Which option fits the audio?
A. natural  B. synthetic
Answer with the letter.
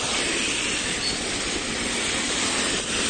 A